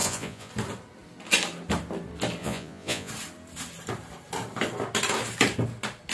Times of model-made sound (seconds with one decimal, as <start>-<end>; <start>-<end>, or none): 0.0-0.5; 2.4-3.1